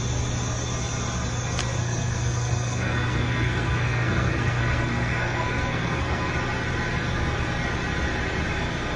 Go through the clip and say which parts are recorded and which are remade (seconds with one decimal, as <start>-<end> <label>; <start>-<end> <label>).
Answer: 0.0-1.8 recorded; 1.8-6.3 remade; 6.3-9.0 recorded